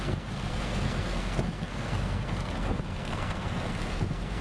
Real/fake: fake